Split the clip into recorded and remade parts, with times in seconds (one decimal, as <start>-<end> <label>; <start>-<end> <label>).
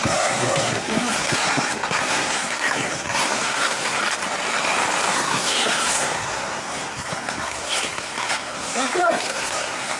0.0-4.0 remade; 4.0-5.1 recorded; 5.1-10.0 remade